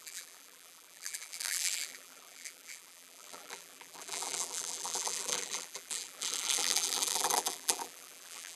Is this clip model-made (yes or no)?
yes